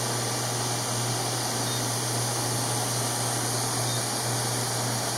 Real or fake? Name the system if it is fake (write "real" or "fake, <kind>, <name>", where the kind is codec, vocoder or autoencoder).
real